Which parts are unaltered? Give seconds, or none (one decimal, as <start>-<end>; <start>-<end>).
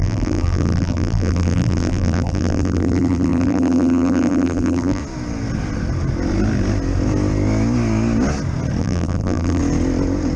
5.0-8.8; 9.6-10.4